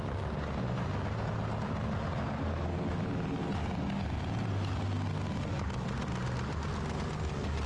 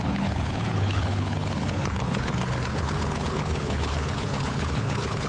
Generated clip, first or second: second